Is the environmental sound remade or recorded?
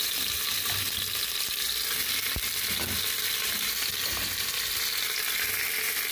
recorded